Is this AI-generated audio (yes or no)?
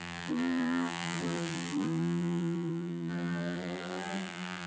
yes